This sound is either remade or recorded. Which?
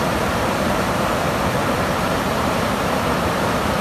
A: remade